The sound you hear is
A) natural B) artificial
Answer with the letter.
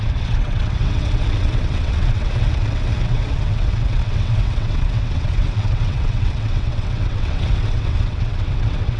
B